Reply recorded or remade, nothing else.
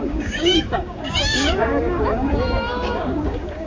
remade